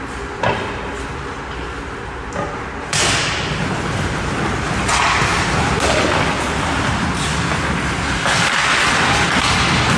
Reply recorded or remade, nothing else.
recorded